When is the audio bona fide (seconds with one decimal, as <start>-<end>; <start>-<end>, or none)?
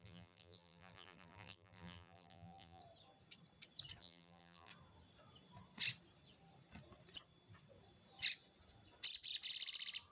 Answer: 2.8-4.0; 4.7-10.1